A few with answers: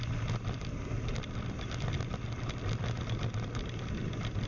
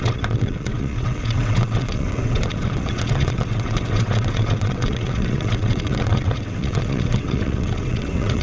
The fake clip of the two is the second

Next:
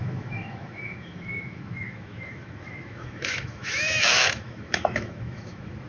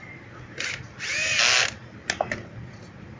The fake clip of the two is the first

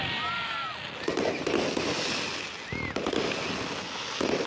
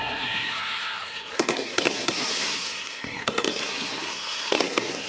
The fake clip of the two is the second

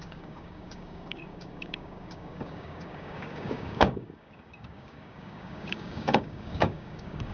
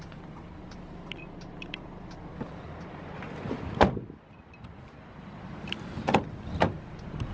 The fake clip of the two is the first